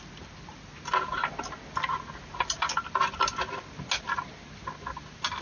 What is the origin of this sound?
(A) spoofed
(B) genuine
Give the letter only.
B